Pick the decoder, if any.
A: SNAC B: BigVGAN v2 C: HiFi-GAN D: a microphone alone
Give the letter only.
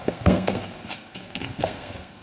A